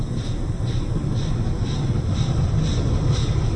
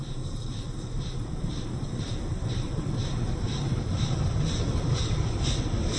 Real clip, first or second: first